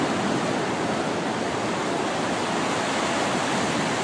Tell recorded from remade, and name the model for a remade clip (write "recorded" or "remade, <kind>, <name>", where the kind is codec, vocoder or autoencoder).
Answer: recorded